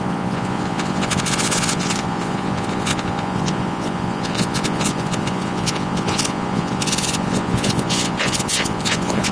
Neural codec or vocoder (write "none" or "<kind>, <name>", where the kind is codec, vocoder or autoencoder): vocoder, Vocos